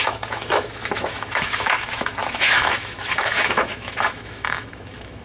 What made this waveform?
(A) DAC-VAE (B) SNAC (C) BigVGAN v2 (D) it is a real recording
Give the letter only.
A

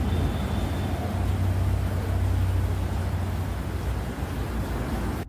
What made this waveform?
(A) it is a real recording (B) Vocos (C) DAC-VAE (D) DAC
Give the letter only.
A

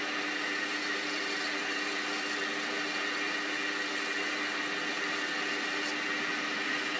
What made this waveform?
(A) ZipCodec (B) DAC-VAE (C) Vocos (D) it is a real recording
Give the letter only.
D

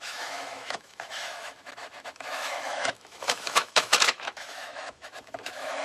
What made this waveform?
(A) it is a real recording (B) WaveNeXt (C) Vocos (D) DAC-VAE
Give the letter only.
D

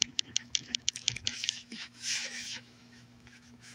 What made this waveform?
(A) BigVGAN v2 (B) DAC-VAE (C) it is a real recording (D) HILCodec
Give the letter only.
B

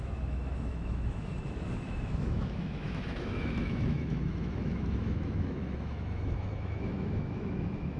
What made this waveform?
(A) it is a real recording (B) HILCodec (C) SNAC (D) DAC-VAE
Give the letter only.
D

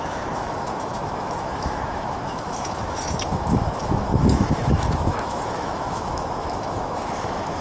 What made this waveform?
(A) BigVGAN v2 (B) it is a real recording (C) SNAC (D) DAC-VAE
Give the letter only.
D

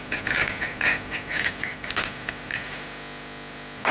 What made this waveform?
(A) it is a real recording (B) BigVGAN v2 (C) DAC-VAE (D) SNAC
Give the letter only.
A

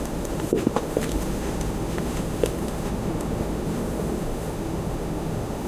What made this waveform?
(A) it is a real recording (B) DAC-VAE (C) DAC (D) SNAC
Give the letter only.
B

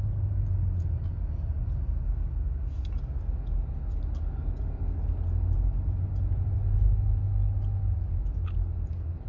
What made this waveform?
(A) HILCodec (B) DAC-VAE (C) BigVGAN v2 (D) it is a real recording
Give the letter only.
D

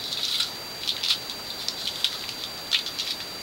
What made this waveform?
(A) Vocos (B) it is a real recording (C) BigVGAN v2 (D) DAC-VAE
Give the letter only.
B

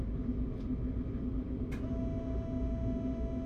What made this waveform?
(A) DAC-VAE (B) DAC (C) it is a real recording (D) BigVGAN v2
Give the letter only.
C